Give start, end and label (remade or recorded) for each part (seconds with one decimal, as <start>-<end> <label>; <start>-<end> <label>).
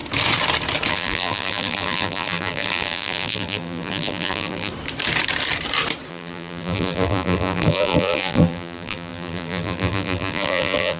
0.0-0.9 recorded; 0.9-4.7 remade; 4.7-6.1 recorded; 6.1-11.0 remade